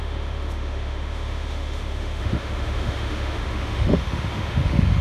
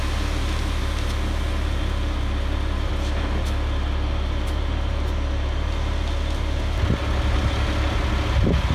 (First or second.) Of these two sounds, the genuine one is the second